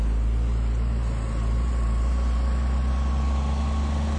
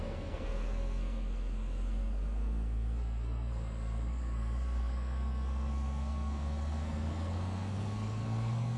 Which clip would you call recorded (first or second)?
first